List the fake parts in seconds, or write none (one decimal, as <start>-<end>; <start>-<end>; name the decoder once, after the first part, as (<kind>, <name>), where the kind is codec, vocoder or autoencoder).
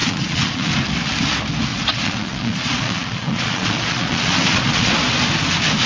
0.0-0.7 (vocoder, Vocos); 1.7-4.9